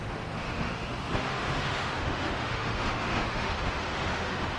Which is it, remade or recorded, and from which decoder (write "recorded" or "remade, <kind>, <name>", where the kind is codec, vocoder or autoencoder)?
remade, autoencoder, DAC-VAE